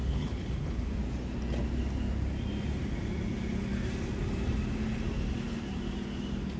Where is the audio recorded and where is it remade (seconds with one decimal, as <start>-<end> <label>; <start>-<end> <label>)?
0.0-0.9 remade; 0.9-6.6 recorded